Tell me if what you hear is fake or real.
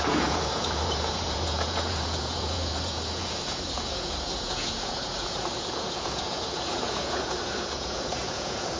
fake